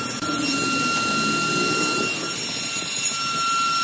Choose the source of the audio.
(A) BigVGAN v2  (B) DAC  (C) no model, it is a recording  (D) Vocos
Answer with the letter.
C